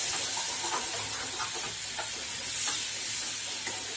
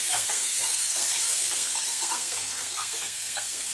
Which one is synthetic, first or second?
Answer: second